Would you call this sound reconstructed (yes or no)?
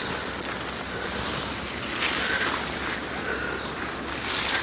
no